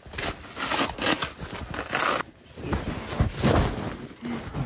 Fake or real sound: real